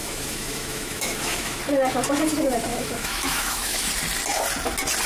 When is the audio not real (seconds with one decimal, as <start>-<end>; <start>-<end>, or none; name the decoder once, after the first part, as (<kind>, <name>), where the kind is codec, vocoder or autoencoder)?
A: 0.0-1.6 (autoencoder, DAC-VAE); 2.7-3.9